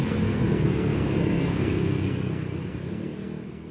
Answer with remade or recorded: remade